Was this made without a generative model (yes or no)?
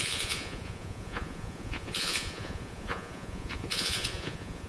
no